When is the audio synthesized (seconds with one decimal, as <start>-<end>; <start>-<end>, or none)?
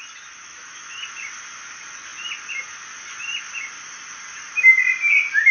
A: 0.4-1.0